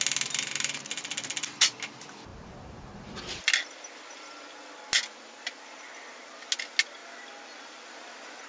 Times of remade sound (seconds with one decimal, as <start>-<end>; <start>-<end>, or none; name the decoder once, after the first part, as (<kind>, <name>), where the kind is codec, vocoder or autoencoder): 2.3-3.4 (vocoder, BigVGAN v2)